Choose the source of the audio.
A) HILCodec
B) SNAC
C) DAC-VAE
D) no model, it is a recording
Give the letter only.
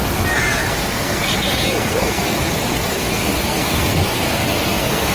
B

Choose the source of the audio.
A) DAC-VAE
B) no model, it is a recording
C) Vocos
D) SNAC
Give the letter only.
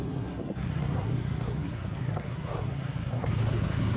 D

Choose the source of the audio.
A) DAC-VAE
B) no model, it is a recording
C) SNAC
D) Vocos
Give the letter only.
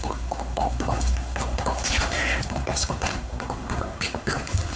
C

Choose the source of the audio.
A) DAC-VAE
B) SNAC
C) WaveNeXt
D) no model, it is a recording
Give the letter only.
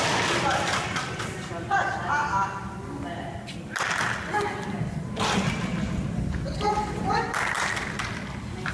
D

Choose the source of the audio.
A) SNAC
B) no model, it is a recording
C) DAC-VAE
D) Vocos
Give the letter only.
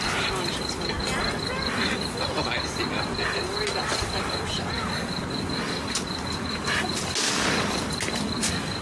B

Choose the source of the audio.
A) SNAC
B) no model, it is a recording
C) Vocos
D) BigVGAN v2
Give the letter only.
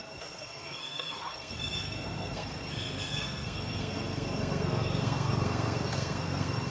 A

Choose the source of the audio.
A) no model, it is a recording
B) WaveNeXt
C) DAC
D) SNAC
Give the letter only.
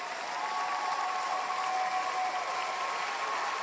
A